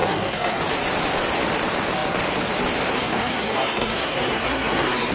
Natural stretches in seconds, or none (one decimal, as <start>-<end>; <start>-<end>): 0.6-2.9